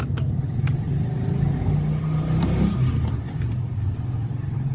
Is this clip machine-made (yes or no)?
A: no